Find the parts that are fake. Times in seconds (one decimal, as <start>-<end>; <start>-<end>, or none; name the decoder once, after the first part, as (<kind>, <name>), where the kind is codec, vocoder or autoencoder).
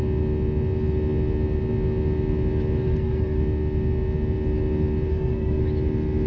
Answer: 2.9-3.4 (codec, SNAC); 5.1-5.6